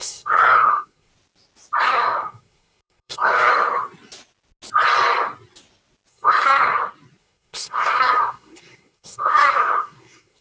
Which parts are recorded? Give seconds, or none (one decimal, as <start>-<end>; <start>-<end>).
1.1-1.8; 3.5-6.1; 6.7-7.2